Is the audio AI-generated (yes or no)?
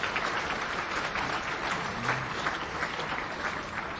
yes